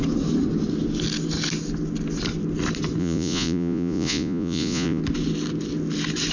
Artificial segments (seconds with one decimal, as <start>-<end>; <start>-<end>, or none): 3.0-5.0